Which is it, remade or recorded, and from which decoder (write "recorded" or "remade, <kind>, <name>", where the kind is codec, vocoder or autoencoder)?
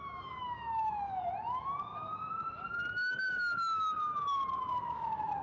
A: remade, autoencoder, DAC-VAE